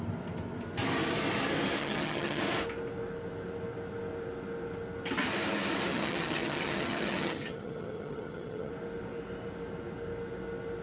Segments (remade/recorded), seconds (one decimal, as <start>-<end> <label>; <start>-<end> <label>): 0.0-1.8 recorded; 1.8-2.4 remade; 2.4-5.9 recorded; 5.9-8.7 remade; 8.7-10.8 recorded